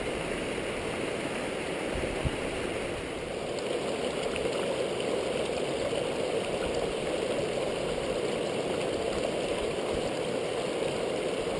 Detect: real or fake real